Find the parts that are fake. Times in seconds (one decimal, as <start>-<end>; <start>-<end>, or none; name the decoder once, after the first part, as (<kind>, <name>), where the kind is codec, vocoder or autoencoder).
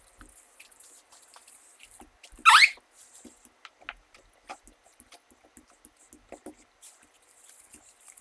none